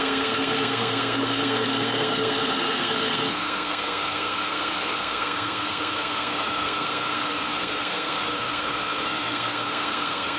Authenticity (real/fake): fake